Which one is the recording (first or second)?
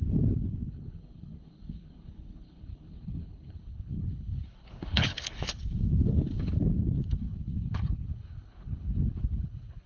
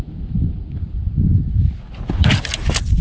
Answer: second